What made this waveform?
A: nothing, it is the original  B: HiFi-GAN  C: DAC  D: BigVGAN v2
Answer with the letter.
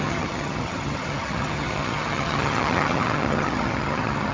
B